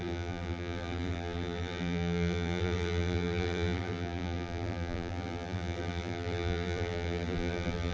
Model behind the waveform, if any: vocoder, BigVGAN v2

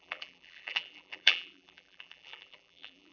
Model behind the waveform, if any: vocoder, BigVGAN v2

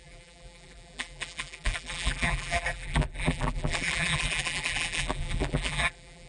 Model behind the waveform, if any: vocoder, BigVGAN v2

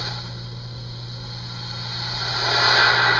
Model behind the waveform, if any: none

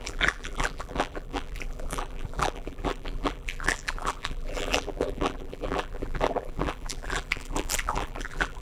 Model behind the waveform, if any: vocoder, BigVGAN v2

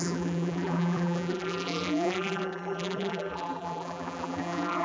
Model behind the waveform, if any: vocoder, BigVGAN v2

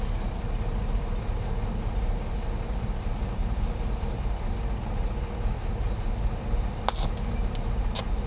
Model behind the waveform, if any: none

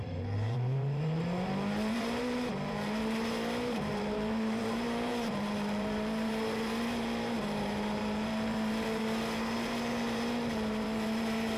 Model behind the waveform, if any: vocoder, BigVGAN v2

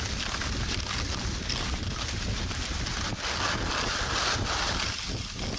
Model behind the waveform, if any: none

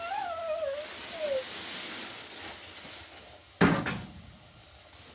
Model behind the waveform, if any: none